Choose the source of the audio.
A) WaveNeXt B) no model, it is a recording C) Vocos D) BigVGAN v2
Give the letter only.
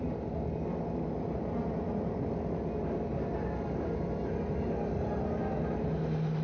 B